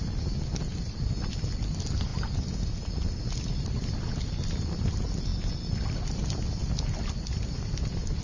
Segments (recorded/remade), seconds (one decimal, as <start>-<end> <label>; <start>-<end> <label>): 0.0-8.2 recorded